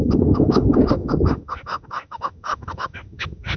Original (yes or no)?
no